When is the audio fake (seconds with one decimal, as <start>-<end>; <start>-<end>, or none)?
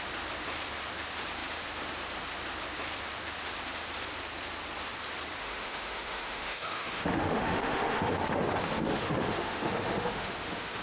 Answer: 5.4-8.1; 8.9-10.8